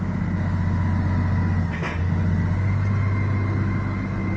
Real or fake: real